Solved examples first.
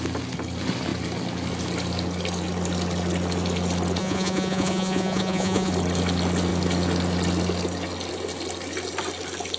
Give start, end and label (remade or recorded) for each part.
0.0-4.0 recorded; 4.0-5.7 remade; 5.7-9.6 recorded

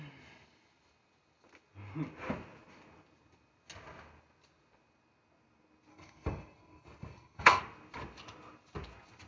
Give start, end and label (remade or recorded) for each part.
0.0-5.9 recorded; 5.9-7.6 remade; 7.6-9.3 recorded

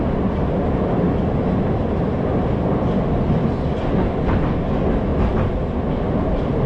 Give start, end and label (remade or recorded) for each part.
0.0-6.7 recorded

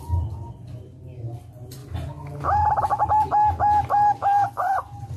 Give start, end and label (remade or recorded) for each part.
0.0-5.2 recorded